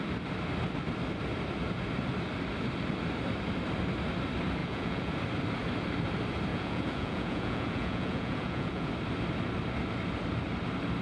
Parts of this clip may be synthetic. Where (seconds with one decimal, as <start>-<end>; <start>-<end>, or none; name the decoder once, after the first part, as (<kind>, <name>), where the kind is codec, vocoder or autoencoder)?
4.6-5.1 (vocoder, Vocos); 6.5-8.9